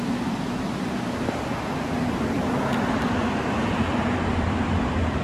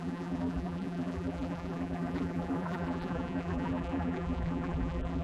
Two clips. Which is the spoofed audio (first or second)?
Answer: second